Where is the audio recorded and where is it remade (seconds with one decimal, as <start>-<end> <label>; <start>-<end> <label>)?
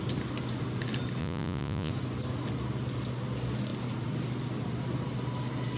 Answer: 0.0-1.2 recorded; 1.2-1.9 remade; 1.9-5.8 recorded